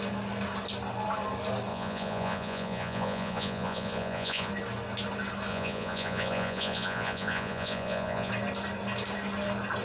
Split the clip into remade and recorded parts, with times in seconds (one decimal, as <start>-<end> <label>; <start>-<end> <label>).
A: 0.0-1.7 recorded; 1.7-4.5 remade; 4.5-5.5 recorded; 5.5-8.3 remade; 8.3-9.8 recorded